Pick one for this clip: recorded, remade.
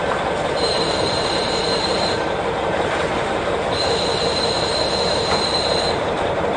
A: remade